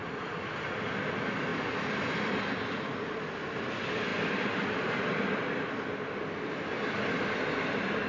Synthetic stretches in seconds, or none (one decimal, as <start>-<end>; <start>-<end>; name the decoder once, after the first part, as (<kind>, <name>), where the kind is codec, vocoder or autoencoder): none